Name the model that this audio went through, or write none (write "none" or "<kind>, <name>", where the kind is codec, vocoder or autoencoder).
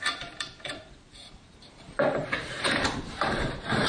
vocoder, BigVGAN v2